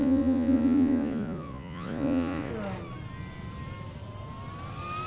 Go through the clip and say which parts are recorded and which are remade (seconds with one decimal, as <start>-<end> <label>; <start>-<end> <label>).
0.0-2.5 remade; 2.5-5.1 recorded